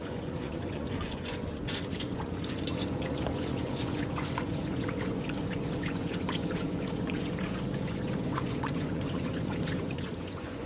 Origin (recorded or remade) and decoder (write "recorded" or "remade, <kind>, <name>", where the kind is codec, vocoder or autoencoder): remade, vocoder, Vocos